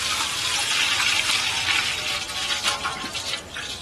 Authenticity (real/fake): real